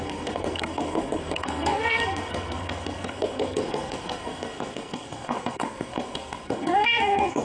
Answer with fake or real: fake